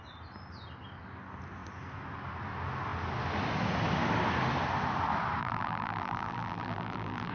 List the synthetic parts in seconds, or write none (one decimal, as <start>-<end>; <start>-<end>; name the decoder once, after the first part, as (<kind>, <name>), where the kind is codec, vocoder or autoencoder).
5.4-7.3 (vocoder, BigVGAN v2)